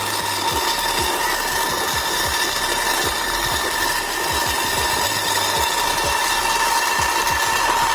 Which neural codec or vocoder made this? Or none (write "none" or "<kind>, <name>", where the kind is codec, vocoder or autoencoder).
none